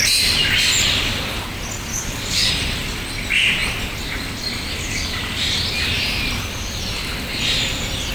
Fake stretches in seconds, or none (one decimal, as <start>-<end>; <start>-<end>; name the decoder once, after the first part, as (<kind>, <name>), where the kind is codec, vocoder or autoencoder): 1.9-2.5 (codec, DAC)